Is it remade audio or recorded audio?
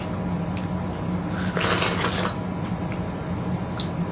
recorded